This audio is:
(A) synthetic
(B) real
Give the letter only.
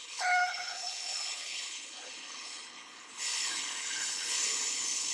A